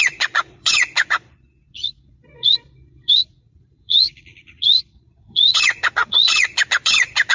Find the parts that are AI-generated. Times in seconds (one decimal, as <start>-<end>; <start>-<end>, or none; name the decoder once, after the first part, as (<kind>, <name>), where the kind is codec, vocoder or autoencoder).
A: 0.0-7.3 (vocoder, Vocos)